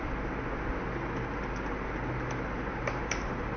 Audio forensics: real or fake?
real